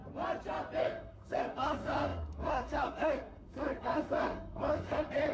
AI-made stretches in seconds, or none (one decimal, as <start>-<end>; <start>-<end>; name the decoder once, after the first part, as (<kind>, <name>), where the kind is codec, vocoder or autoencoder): 0.8-5.3 (codec, SNAC)

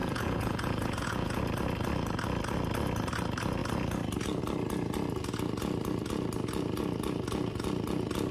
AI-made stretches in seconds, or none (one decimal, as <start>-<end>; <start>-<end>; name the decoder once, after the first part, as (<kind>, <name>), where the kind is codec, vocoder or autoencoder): 0.0-1.4 (vocoder, Vocos)

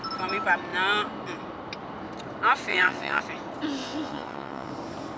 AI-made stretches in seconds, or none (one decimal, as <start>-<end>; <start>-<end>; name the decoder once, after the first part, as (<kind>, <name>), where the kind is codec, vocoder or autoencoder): 2.7-3.2 (vocoder, WaveNeXt); 3.8-4.7